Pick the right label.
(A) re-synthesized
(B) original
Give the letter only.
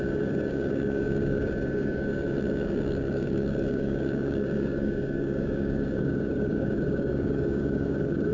A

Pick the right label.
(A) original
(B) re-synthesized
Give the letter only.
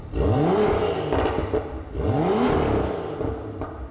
A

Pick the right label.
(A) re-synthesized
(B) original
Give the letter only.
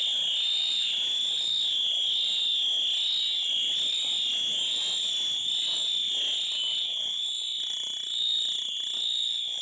B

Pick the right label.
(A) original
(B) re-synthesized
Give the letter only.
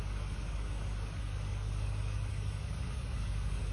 B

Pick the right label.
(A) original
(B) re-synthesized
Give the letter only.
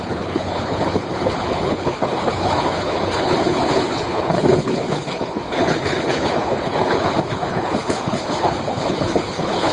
B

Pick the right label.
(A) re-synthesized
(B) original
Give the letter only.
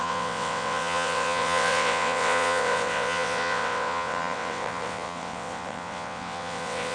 A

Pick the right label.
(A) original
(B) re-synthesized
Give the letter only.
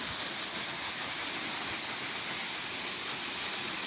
A